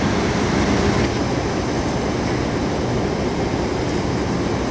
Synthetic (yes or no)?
no